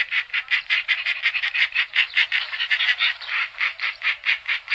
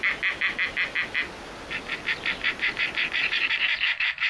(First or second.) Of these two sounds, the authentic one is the second